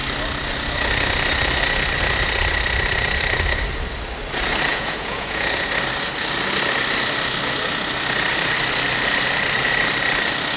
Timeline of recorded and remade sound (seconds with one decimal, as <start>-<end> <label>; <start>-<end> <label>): 0.0-4.7 recorded; 4.7-5.7 remade; 5.7-10.6 recorded